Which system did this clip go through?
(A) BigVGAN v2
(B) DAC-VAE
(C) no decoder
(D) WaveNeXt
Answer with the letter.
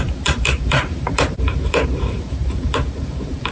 A